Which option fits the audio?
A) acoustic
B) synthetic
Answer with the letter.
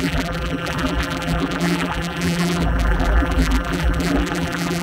B